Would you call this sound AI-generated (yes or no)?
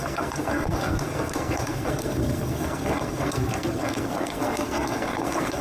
yes